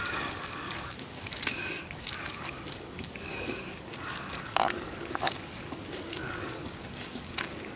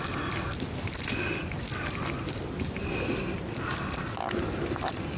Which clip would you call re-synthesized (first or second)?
first